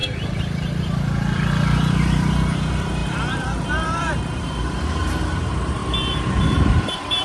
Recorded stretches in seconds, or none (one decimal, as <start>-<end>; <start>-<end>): 5.8-6.8